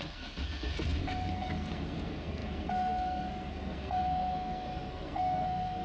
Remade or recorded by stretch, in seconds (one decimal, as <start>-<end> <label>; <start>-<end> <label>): 0.0-5.8 remade